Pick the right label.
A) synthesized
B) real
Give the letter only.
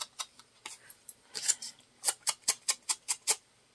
B